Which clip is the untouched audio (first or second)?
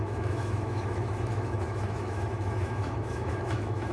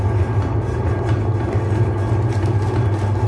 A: second